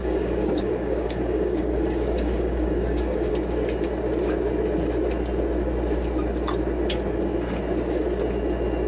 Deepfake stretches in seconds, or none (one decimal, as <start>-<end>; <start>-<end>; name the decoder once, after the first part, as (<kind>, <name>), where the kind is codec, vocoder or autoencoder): 0.0-3.3 (codec, DAC)